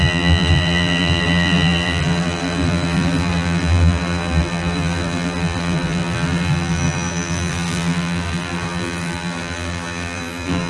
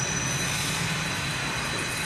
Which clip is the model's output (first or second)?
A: first